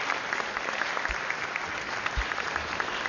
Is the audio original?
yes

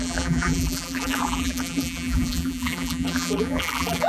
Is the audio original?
no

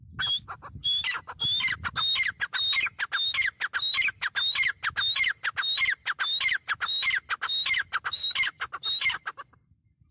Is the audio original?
yes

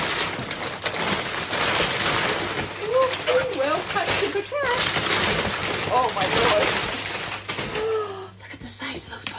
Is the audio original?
yes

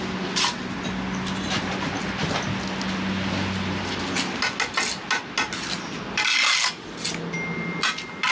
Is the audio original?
yes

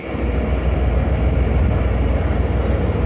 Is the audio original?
yes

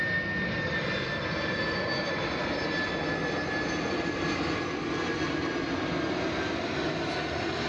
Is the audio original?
yes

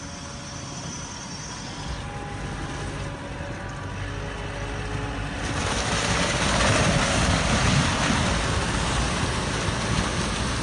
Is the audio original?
yes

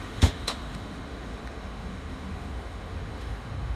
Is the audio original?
no